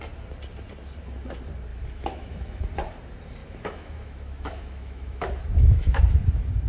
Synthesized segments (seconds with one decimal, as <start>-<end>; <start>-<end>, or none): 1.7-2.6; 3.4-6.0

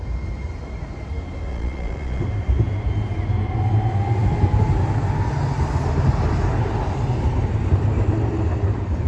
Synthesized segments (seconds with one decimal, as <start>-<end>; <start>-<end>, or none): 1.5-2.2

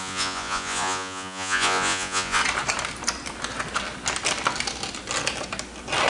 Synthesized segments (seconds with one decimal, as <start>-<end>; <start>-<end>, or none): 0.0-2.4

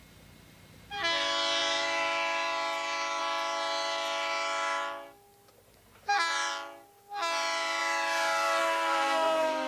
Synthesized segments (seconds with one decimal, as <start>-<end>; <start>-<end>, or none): 8.6-9.7

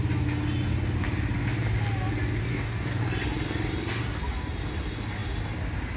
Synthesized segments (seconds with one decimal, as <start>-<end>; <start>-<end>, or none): 2.5-3.0